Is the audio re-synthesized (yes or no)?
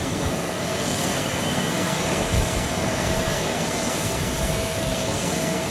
yes